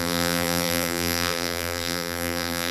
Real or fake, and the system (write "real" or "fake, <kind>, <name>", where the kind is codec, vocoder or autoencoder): fake, vocoder, BigVGAN v2